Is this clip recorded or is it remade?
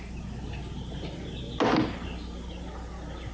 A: recorded